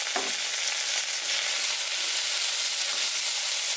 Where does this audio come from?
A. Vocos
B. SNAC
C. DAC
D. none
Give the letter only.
D